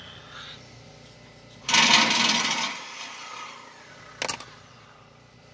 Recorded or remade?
recorded